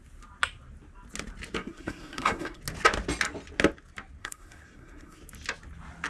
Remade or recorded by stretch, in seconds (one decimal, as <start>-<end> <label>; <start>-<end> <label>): 0.0-1.6 recorded; 1.6-2.6 remade; 2.6-4.2 recorded; 4.2-5.2 remade; 5.2-6.1 recorded